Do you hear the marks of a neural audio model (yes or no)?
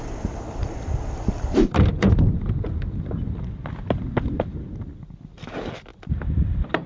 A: yes